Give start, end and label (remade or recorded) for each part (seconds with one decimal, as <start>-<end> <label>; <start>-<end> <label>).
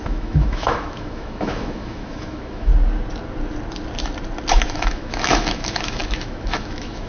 0.0-2.7 remade; 2.7-4.5 recorded; 4.5-7.1 remade